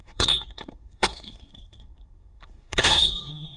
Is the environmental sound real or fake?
fake